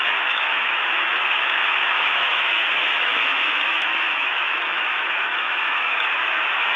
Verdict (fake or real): fake